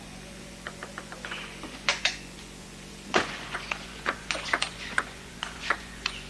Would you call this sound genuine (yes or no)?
no